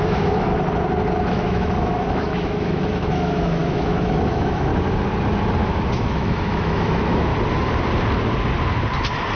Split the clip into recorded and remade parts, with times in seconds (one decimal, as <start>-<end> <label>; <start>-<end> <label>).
0.0-0.5 remade; 0.5-1.3 recorded; 1.3-4.7 remade; 4.7-5.6 recorded; 5.6-7.3 remade; 7.3-9.4 recorded